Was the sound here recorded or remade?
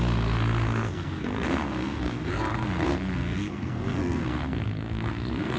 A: remade